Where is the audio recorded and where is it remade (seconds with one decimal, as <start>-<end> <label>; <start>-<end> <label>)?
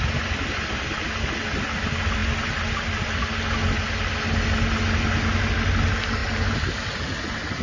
0.0-7.6 recorded